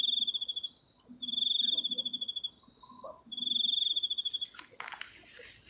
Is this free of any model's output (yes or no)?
yes